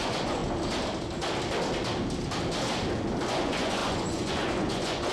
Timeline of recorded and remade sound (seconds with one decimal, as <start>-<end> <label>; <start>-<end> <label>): 0.0-0.4 remade; 0.4-3.3 recorded; 3.3-5.1 remade